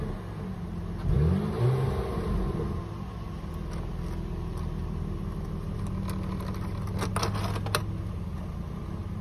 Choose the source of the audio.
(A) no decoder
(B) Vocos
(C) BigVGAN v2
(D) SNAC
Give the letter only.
A